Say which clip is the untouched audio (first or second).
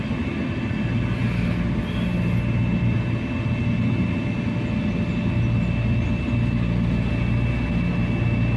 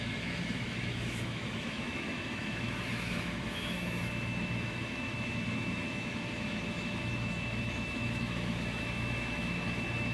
first